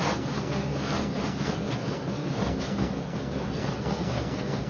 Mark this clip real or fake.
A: fake